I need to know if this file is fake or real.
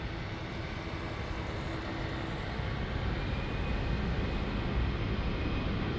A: real